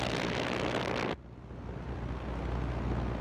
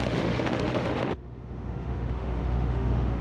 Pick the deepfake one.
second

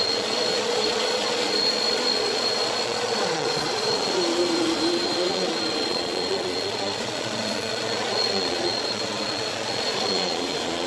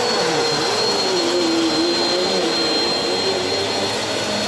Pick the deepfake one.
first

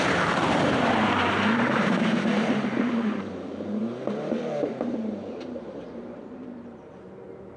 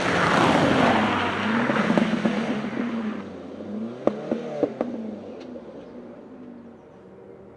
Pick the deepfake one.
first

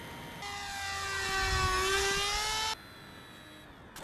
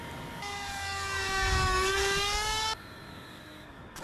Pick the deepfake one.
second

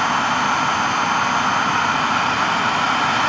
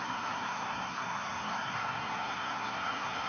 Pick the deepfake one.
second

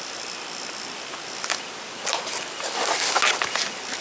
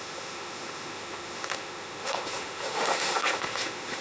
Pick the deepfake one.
second